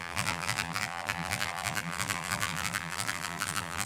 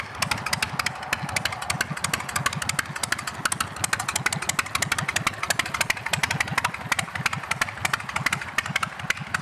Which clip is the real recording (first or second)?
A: second